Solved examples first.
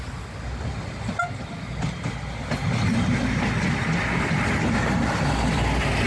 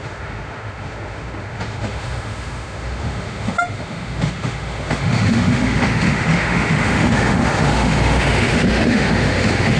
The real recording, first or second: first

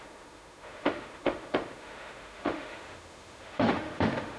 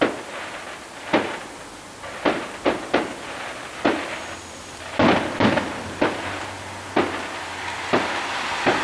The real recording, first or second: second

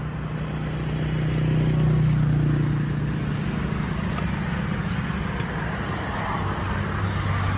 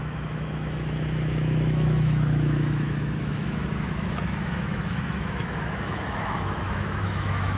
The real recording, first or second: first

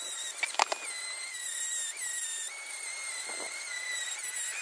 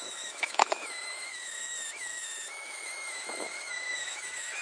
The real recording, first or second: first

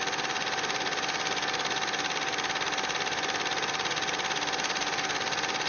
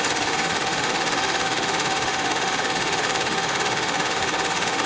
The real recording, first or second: first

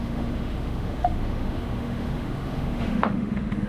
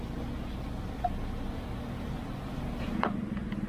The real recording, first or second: second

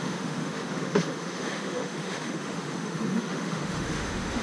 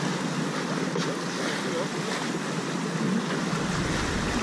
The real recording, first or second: second